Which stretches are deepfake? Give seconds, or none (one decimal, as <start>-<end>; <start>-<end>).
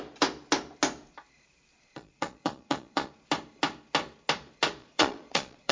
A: 1.7-3.1; 4.8-5.7